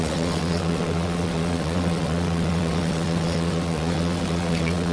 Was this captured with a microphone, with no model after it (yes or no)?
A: no